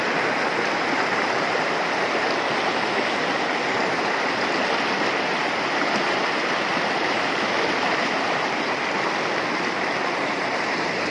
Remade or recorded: recorded